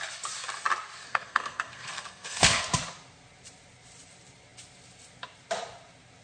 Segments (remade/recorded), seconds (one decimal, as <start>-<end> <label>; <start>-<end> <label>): 0.0-1.1 recorded; 1.1-2.7 remade; 2.7-6.2 recorded